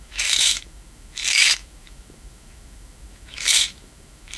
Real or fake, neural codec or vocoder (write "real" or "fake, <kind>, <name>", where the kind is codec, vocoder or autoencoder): fake, autoencoder, DAC-VAE